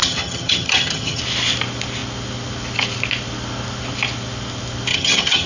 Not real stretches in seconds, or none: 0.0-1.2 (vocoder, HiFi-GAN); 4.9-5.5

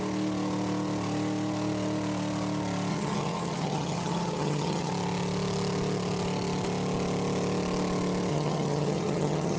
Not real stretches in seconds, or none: 2.9-4.9 (vocoder, HiFi-GAN); 8.3-9.6